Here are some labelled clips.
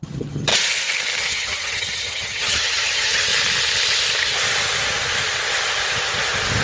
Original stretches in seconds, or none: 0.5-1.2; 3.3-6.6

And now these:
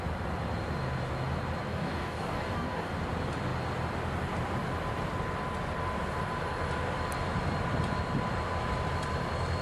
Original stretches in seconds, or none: 0.0-1.7; 2.9-9.6